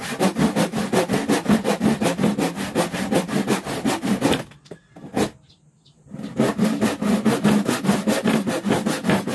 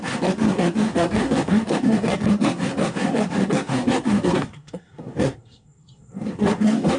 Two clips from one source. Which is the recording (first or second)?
first